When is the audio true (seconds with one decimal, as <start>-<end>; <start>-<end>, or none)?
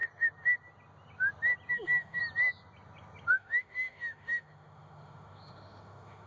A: 0.0-1.7; 2.2-3.3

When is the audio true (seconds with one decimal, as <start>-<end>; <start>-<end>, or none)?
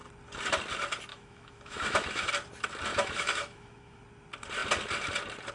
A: 0.0-1.1; 2.3-2.9; 4.0-5.5